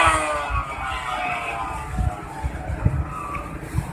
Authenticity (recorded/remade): recorded